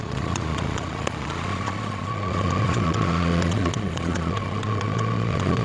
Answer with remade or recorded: remade